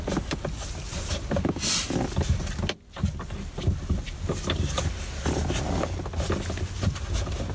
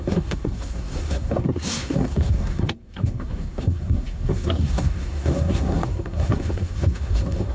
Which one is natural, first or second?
first